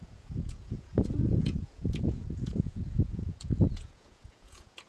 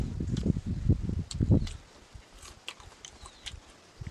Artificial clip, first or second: first